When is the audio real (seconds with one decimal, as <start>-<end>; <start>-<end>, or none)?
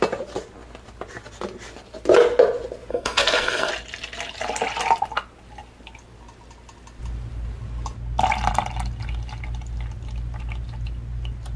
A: 0.0-2.9; 3.7-11.6